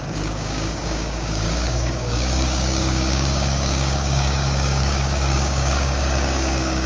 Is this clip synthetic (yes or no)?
yes